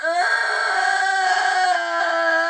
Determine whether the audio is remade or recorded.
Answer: recorded